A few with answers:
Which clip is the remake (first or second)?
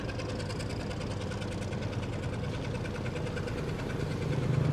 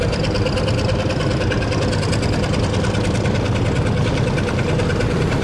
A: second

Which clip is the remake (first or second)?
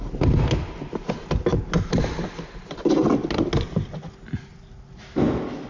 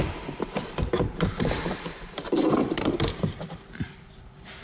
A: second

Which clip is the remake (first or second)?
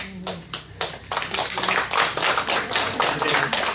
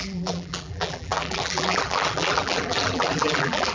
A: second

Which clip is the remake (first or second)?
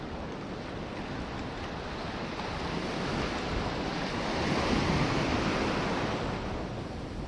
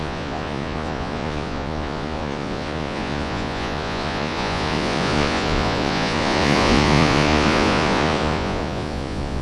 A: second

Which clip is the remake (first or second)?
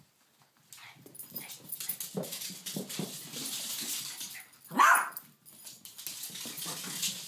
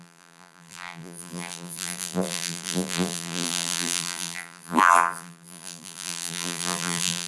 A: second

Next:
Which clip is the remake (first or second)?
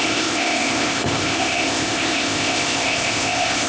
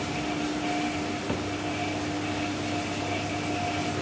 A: first